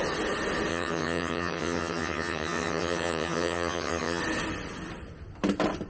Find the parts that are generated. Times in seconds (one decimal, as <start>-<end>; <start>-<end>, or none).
0.7-4.2